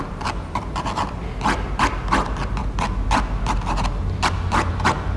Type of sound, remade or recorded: recorded